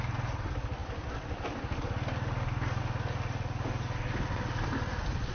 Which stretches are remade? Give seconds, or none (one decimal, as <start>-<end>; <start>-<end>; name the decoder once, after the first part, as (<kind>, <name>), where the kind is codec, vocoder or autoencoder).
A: none